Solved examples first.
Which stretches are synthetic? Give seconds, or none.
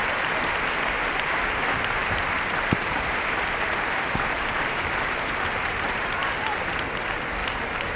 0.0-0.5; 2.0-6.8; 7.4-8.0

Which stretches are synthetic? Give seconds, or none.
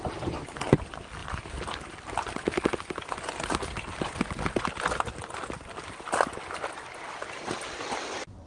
none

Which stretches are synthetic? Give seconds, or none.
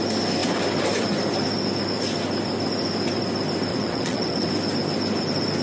3.7-4.5